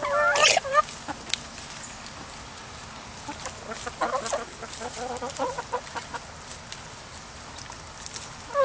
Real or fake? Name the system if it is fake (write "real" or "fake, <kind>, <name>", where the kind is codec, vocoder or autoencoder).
real